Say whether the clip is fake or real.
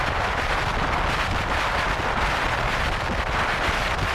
real